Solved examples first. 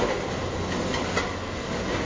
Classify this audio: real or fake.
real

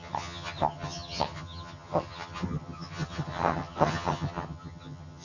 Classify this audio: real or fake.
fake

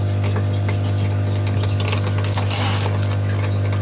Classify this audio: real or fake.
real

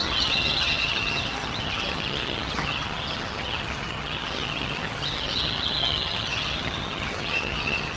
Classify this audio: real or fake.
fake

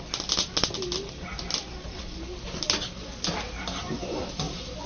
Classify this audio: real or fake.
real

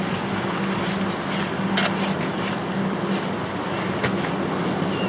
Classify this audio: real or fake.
real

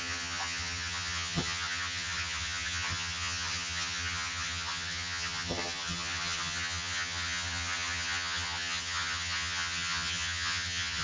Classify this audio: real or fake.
fake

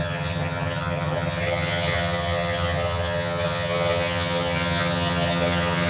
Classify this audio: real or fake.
fake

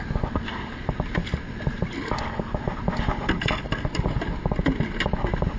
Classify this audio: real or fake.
real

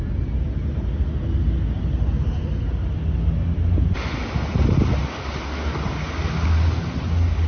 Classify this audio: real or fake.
real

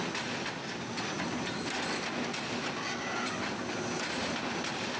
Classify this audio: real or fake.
real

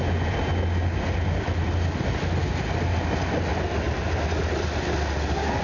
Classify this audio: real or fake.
real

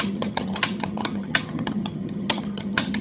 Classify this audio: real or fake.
fake